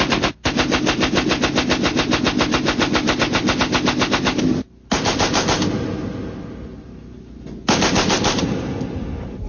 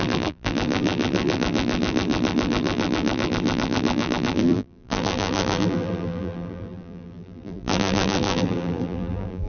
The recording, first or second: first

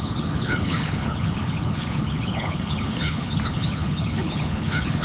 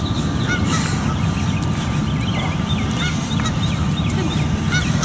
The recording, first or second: second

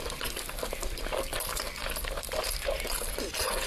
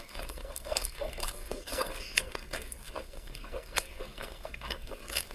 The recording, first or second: first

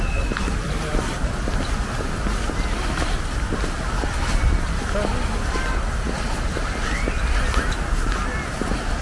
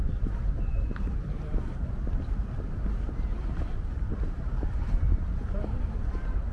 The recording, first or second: first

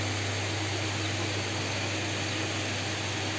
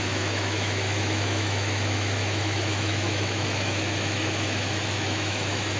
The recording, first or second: first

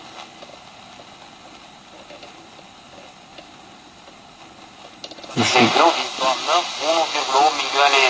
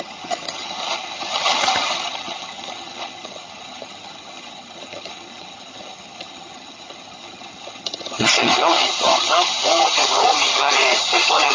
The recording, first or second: first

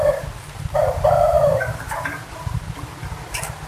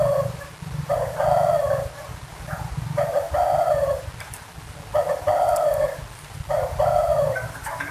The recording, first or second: second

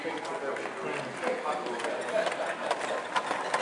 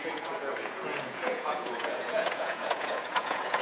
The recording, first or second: first